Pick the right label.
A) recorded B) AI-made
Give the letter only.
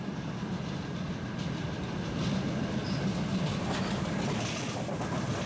A